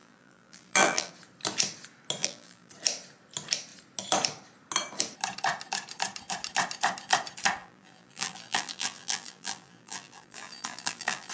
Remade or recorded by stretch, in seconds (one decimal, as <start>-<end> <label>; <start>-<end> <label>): 0.0-1.1 remade; 1.1-2.2 recorded; 2.2-2.7 remade; 2.7-7.6 recorded; 7.6-11.3 remade